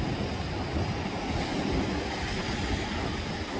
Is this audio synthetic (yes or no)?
no